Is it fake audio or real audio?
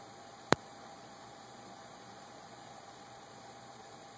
fake